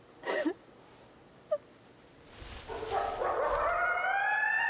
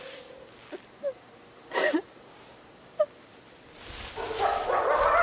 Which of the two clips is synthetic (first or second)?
second